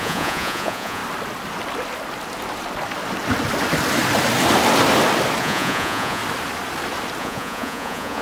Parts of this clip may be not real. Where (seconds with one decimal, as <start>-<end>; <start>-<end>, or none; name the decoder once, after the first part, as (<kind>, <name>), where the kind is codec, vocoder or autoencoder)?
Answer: 0.0-1.0 (vocoder, Vocos); 5.4-6.2; 7.2-8.2